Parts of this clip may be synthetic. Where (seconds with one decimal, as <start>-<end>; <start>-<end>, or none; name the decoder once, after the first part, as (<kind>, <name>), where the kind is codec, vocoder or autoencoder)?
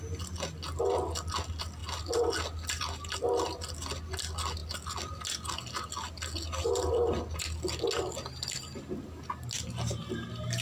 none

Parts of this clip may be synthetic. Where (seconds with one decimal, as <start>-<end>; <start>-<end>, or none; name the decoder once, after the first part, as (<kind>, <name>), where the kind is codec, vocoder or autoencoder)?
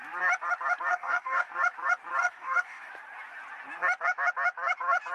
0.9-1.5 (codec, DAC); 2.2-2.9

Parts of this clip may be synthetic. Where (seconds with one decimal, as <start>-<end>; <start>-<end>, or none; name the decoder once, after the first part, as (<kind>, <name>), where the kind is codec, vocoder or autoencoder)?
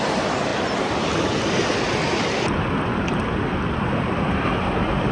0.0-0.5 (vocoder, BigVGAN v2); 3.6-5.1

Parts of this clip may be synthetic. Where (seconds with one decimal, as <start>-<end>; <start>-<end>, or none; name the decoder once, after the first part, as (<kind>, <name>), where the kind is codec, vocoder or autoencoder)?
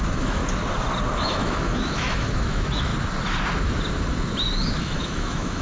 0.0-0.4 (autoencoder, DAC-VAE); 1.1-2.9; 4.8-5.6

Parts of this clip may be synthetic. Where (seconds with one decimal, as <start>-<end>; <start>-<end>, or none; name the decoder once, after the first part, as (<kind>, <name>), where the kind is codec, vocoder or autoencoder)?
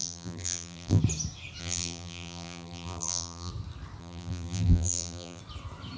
0.0-1.0 (vocoder, BigVGAN v2); 1.6-3.5; 4.0-5.4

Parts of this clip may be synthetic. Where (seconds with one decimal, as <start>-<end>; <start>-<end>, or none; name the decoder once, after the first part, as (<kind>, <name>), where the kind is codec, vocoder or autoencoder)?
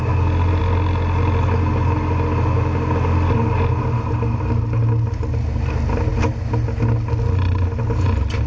none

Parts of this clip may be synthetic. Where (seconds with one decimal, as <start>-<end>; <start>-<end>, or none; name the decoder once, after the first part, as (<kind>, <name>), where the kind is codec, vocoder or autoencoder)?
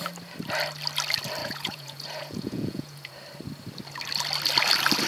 1.4-3.1 (vocoder, Vocos)